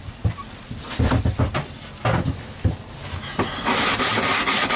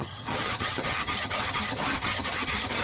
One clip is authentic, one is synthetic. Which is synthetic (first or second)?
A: second